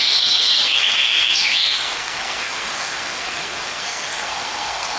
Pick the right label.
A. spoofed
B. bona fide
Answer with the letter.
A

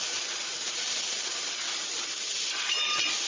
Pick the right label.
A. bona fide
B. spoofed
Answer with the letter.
B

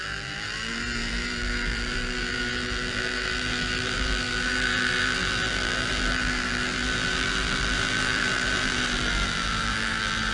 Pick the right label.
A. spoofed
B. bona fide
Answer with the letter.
A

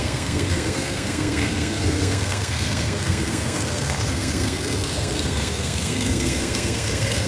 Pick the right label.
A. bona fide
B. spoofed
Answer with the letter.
B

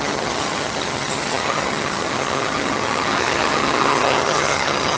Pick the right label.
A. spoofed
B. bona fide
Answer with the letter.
A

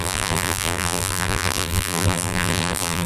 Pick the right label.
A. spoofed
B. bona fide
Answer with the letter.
A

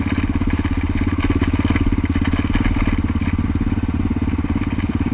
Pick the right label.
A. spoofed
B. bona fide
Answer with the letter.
B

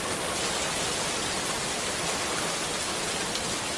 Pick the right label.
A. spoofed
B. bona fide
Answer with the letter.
B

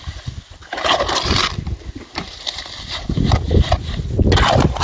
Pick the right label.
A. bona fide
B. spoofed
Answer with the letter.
A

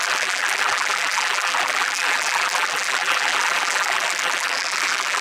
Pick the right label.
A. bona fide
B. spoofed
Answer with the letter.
B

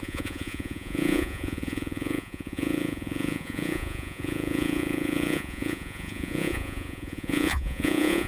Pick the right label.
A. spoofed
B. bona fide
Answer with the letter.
A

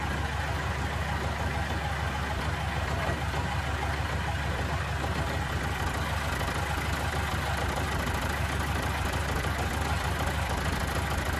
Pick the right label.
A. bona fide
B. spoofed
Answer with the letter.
A